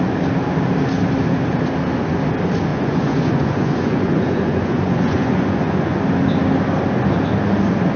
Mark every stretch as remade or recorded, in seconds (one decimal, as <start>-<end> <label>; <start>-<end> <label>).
0.0-2.7 recorded; 2.7-6.0 remade; 6.0-8.0 recorded